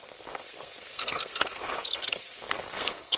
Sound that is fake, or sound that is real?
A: fake